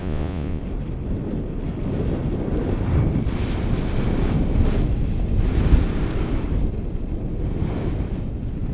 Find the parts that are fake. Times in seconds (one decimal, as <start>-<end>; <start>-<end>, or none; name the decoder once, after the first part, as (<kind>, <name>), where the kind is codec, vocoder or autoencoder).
0.0-0.6 (vocoder, Vocos)